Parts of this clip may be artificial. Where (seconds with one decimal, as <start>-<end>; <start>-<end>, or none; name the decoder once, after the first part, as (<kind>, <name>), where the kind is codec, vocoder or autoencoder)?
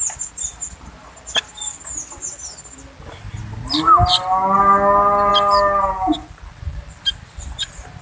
none